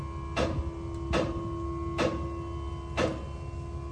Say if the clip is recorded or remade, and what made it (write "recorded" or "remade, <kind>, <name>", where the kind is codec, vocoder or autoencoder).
recorded